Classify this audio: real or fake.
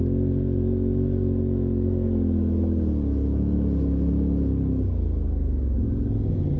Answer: real